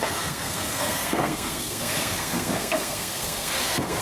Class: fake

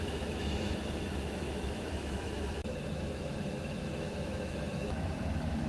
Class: fake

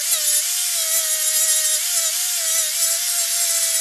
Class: real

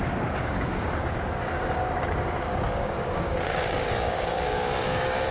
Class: fake